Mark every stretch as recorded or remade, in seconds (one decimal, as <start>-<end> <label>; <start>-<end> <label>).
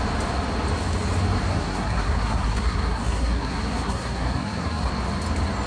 0.0-1.5 recorded; 1.5-4.9 remade; 4.9-5.7 recorded